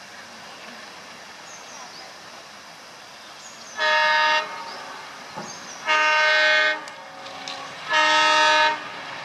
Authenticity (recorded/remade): recorded